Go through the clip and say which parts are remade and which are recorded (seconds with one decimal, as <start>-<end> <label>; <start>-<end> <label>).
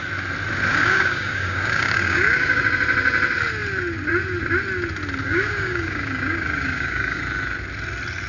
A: 0.0-0.7 recorded; 0.7-2.6 remade; 2.6-5.2 recorded; 5.2-7.2 remade; 7.2-8.3 recorded